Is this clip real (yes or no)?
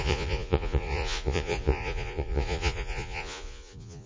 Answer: no